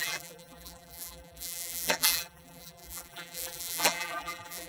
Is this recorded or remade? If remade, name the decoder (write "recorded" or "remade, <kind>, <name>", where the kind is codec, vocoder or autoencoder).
remade, vocoder, BigVGAN v2